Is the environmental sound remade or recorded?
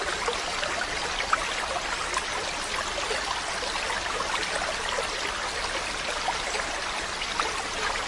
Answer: recorded